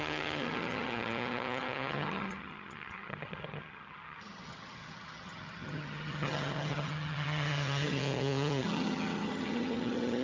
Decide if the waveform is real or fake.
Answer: fake